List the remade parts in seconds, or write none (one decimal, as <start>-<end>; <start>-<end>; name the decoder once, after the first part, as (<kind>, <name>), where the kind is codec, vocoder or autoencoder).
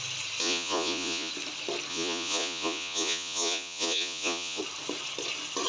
0.4-1.3 (vocoder, Vocos); 1.9-4.6